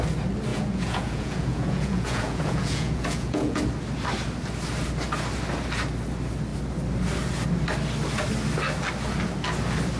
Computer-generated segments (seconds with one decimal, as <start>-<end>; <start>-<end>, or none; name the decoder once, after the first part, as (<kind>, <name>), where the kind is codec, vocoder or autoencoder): 0.5-3.6 (vocoder, Vocos)